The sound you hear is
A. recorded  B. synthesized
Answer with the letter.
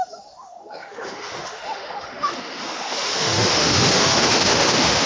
B